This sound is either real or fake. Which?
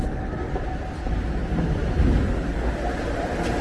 real